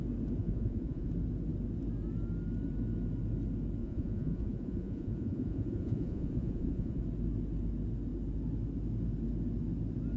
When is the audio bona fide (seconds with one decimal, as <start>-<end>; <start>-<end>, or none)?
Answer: 0.0-0.4; 1.1-3.8; 7.0-10.2

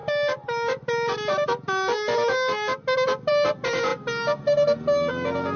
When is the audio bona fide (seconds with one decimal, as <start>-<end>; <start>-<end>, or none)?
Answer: 0.0-5.6

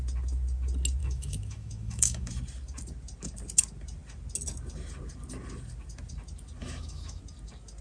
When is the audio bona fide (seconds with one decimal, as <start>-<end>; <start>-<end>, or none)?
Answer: 0.0-1.0; 2.4-6.6; 7.2-7.8

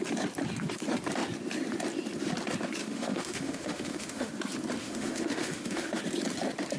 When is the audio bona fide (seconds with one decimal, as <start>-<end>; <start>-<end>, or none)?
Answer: 0.0-2.8; 4.3-4.8; 6.0-6.8

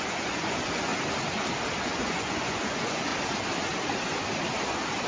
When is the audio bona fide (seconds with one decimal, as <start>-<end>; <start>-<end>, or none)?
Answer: 0.9-1.8; 3.1-5.1

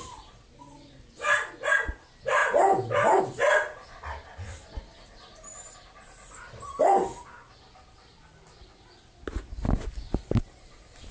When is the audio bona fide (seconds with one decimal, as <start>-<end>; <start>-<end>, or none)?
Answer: 0.0-11.1